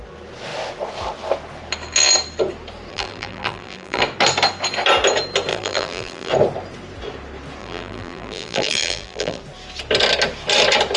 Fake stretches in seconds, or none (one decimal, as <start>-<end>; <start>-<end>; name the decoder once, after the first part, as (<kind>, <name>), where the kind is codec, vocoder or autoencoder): 2.9-4.0 (vocoder, BigVGAN v2); 5.5-6.3; 7.6-9.4